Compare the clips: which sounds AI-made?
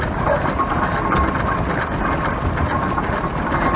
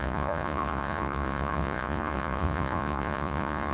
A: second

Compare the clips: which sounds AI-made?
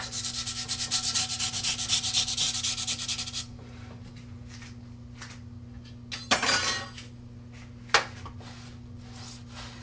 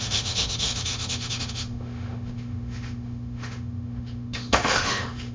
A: second